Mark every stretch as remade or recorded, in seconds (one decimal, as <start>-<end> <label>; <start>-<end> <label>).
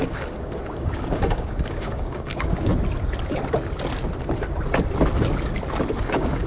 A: 0.0-2.7 remade; 2.7-6.0 recorded; 6.0-6.5 remade